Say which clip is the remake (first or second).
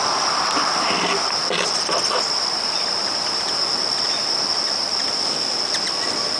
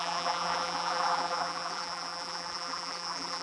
second